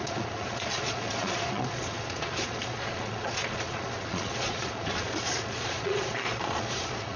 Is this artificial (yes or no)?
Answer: yes